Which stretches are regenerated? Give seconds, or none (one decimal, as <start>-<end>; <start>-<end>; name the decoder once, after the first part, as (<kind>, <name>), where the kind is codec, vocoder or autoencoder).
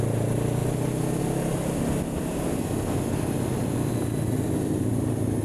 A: none